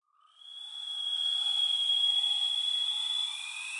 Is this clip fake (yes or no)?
no